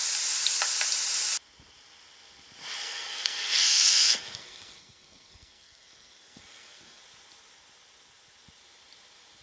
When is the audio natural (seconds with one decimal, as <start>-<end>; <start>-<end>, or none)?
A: 0.0-2.8; 7.0-9.4